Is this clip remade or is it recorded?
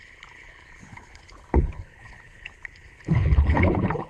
remade